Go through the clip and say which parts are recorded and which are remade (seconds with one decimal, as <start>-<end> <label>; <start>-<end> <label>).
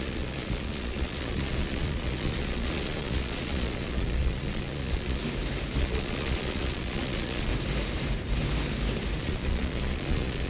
0.0-5.2 remade; 5.2-5.8 recorded; 5.8-7.5 remade; 7.5-9.2 recorded; 9.2-10.5 remade